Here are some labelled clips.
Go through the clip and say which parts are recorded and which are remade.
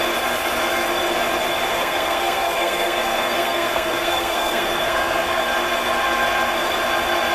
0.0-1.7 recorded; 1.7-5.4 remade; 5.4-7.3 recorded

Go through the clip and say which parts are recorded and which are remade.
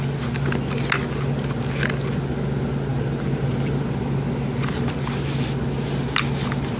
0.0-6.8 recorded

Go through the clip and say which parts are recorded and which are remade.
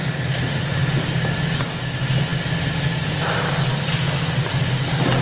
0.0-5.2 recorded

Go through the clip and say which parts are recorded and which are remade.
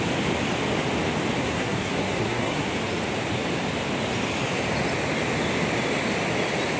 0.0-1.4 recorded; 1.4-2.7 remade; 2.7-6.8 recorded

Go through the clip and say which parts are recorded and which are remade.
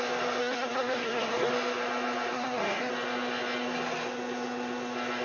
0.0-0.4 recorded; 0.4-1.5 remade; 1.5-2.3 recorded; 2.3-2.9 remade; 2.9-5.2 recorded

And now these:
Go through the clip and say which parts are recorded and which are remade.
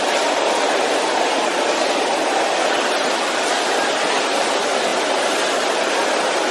0.0-6.5 recorded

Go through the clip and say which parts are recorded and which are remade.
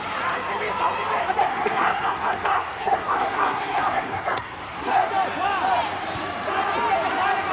0.0-1.4 recorded; 1.4-5.1 remade; 5.1-7.5 recorded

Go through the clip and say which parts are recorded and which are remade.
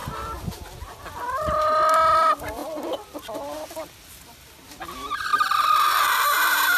0.0-6.8 recorded